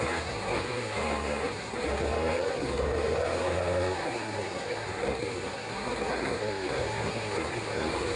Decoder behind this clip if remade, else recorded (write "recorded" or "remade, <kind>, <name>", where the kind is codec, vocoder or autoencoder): remade, codec, SNAC